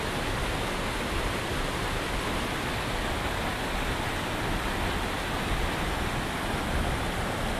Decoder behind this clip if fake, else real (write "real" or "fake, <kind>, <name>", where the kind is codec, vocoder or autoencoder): real